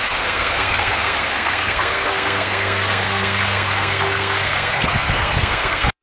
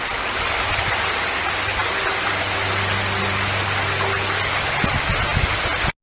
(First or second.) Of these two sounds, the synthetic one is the first